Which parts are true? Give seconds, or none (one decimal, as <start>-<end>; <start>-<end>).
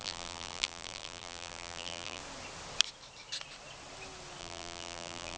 2.2-4.4